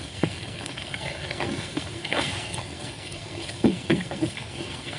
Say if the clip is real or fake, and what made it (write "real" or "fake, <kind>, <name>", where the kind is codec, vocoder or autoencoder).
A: fake, codec, SNAC